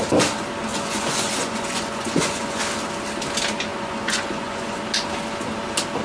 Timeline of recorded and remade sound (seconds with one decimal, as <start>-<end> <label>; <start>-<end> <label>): 0.0-0.7 recorded; 0.7-2.6 remade; 2.6-3.7 recorded; 3.7-4.8 remade; 4.8-6.0 recorded